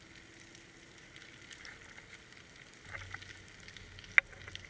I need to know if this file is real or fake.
real